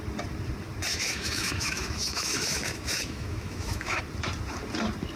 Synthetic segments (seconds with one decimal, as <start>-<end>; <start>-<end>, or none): 0.9-4.0